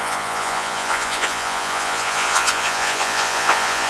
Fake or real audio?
fake